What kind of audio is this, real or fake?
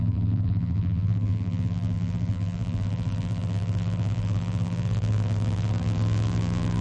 fake